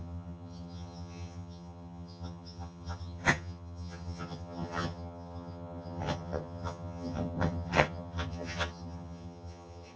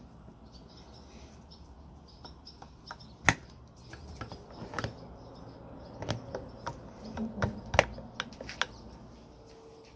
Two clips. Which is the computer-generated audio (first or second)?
first